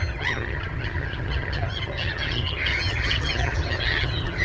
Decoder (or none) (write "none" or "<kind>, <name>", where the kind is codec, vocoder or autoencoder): vocoder, HiFi-GAN